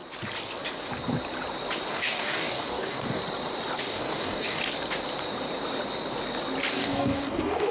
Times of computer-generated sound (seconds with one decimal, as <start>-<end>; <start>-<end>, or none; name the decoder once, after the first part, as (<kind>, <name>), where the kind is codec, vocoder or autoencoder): 1.9-3.2 (codec, DAC); 3.8-4.6; 6.7-7.7